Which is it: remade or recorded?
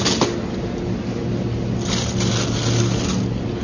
recorded